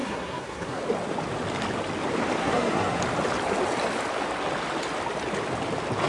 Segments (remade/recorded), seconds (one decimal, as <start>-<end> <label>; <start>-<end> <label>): 0.0-0.8 remade; 0.8-2.4 recorded; 2.4-3.0 remade; 3.0-6.1 recorded